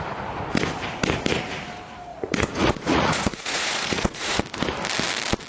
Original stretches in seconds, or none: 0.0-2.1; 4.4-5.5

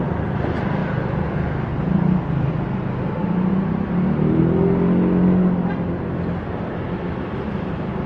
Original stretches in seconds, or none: 0.0-8.1